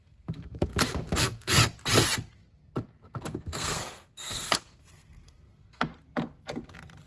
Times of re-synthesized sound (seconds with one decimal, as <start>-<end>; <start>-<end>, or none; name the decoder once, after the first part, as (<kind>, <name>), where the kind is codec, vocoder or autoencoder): 0.0-0.7 (codec, SNAC); 1.2-1.6; 3.2-5.9